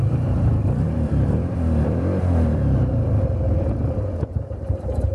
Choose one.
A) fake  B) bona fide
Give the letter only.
A